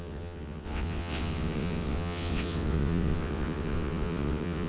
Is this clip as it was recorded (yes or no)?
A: no